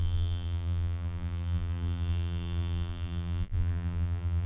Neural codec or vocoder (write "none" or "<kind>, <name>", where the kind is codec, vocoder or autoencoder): vocoder, BigVGAN v2